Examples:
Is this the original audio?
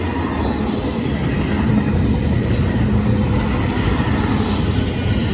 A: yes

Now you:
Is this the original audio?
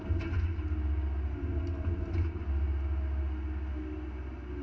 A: yes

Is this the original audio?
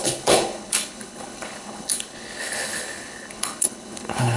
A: no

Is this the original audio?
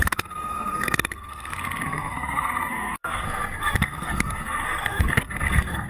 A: no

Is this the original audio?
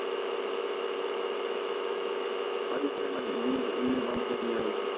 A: no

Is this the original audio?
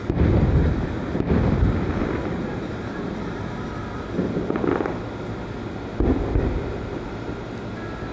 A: yes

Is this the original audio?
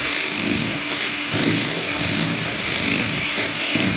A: no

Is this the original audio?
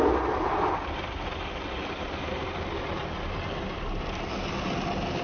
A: yes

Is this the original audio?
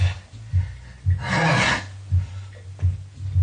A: yes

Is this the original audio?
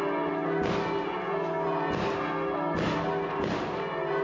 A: yes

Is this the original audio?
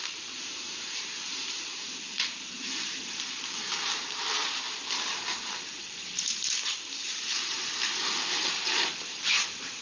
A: no